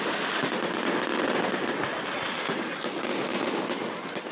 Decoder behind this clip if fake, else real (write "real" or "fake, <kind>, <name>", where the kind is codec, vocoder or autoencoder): real